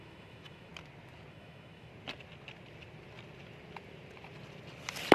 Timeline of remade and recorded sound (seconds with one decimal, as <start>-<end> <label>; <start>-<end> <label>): 0.0-0.7 remade; 0.7-1.3 recorded; 1.3-1.9 remade; 1.9-5.1 recorded